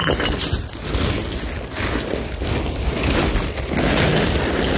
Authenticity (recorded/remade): recorded